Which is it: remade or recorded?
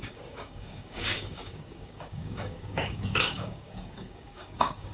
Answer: remade